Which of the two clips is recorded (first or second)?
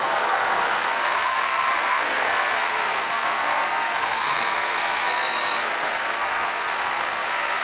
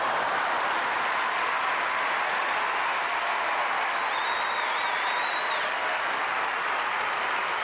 second